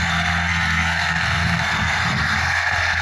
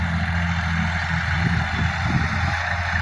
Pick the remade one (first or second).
first